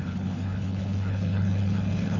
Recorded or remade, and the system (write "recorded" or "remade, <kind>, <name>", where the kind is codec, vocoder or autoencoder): remade, codec, HILCodec